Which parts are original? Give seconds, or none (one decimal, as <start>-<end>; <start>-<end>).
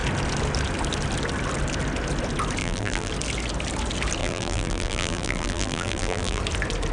0.0-2.6; 3.1-4.2; 6.4-6.9